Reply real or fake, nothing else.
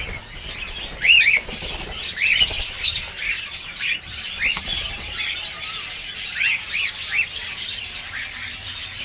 fake